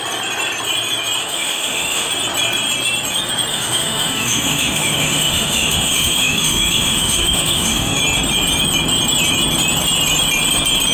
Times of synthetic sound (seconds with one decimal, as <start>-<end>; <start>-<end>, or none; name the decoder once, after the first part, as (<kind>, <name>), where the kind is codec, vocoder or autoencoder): 1.2-2.1 (autoencoder, DAC-VAE); 3.5-8.0